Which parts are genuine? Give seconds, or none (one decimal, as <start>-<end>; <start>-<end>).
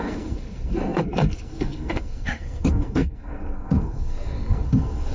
none